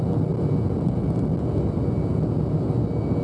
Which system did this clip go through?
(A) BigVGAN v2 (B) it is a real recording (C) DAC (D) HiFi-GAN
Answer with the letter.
B